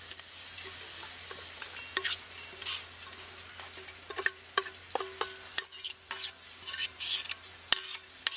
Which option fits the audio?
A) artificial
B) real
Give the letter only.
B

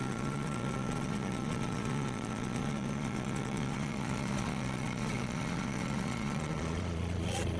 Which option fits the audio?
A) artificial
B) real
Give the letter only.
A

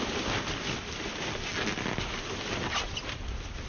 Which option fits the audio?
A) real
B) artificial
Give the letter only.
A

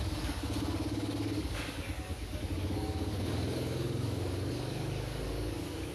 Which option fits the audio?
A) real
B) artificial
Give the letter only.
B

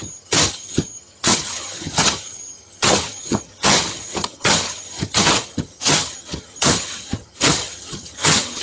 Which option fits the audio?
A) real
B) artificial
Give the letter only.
B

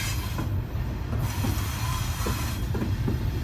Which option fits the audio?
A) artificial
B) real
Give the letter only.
B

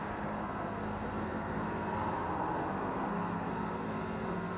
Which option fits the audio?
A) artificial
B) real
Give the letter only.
A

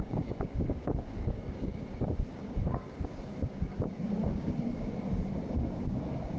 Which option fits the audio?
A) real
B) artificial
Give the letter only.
B